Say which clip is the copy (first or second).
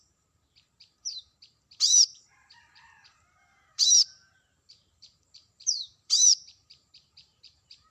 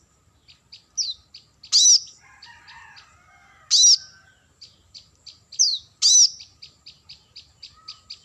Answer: first